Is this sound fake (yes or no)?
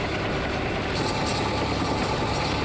no